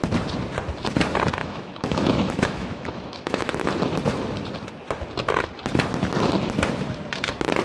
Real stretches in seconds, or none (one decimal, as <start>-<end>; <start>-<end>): 0.0-1.4; 3.7-7.6